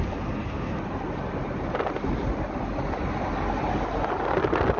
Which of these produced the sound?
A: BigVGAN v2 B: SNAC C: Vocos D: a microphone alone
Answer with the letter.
D